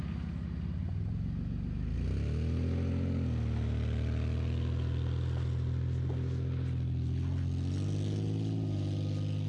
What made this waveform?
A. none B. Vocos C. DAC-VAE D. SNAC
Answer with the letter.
A